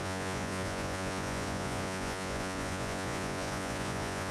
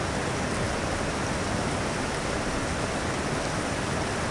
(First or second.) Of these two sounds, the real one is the second